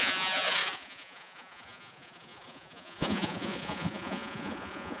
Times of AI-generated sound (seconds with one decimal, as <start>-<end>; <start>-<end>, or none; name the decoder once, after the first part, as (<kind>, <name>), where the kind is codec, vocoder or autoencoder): 0.0-5.0 (vocoder, Vocos)